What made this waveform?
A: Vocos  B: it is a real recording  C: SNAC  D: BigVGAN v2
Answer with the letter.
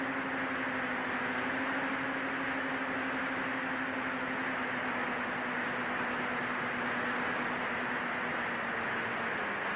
B